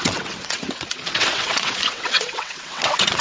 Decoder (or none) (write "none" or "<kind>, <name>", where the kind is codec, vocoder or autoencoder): vocoder, WaveNeXt